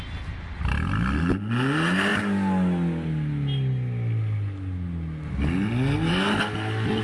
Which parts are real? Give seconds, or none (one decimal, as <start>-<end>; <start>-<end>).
0.0-7.0